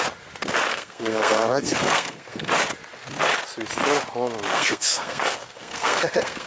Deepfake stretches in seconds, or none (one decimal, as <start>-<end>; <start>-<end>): 0.7-2.5; 4.5-6.5